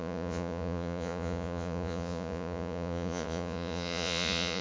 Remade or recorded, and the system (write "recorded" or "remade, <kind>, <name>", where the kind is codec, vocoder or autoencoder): remade, vocoder, Vocos